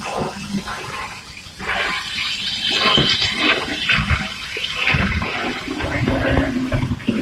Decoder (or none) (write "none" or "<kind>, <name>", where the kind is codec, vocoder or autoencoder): none